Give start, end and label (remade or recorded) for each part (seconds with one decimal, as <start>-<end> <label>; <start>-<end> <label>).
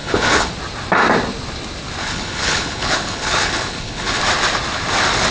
0.0-0.5 remade; 0.5-2.0 recorded; 2.0-4.2 remade; 4.2-5.3 recorded